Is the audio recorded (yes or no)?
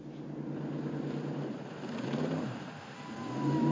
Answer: yes